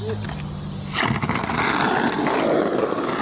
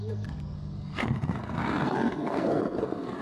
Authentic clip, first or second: first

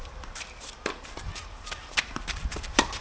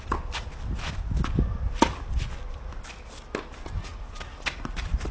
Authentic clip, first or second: second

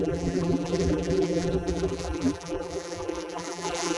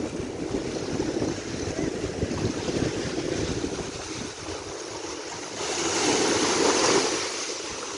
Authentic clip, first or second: second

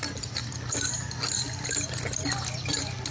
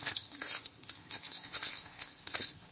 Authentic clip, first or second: first